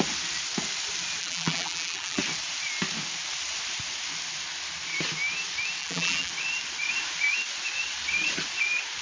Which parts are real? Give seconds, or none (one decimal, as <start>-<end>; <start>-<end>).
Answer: 0.0-1.2; 2.2-5.8; 6.3-9.0

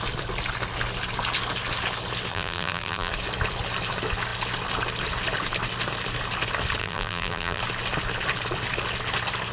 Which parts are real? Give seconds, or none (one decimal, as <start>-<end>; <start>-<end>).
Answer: 0.0-2.3; 3.1-6.8; 7.6-9.5

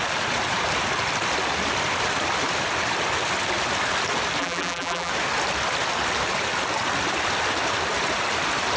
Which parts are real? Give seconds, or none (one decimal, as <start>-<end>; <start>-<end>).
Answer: 0.0-4.4; 5.1-8.8